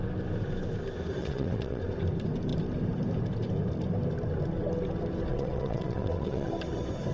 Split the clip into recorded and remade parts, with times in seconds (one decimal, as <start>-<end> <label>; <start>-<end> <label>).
0.0-1.2 recorded; 1.2-1.8 remade; 1.8-5.3 recorded; 5.3-6.5 remade; 6.5-7.1 recorded